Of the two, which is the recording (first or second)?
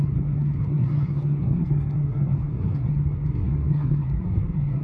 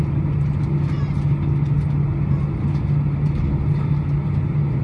second